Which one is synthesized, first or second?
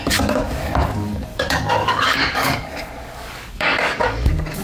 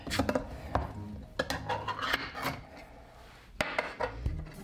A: first